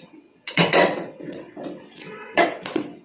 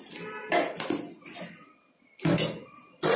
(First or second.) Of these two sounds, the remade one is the first